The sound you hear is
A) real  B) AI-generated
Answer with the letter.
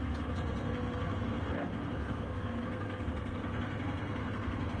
B